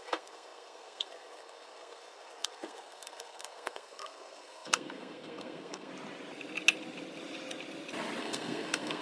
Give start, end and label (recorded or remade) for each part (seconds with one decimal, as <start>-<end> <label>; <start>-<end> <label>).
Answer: 0.0-5.9 remade; 5.9-8.2 recorded; 8.2-9.0 remade

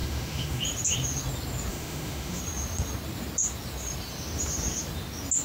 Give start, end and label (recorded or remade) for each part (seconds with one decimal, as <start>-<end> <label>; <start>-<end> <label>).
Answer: 0.0-0.6 remade; 0.6-1.7 recorded; 1.7-2.4 remade; 2.4-5.4 recorded

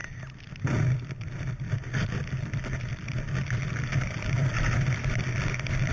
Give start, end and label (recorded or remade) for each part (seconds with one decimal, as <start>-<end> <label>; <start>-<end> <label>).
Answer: 0.0-3.9 recorded; 3.9-4.5 remade; 4.5-5.9 recorded

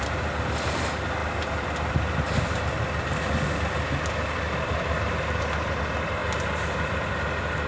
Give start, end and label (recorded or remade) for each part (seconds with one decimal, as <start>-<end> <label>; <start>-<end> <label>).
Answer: 0.0-7.7 recorded

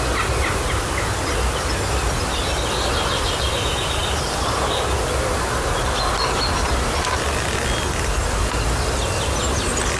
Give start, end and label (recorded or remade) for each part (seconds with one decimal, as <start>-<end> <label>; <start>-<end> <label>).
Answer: 0.0-10.0 recorded

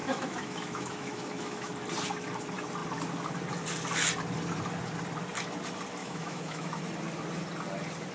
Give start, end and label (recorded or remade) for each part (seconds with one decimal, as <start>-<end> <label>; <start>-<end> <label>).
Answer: 0.0-1.7 remade; 1.7-6.0 recorded; 6.0-6.8 remade; 6.8-8.1 recorded